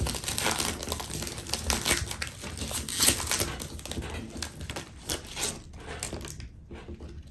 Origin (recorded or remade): recorded